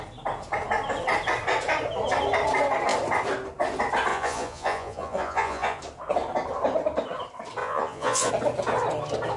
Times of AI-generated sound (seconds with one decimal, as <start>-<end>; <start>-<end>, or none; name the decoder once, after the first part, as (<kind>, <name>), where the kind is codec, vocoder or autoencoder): 4.1-5.8 (vocoder, Vocos); 7.6-8.3